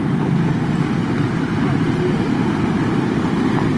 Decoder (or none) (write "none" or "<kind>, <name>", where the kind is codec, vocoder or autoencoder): none